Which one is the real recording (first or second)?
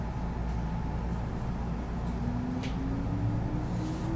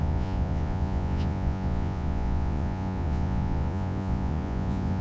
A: first